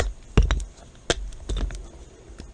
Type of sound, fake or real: real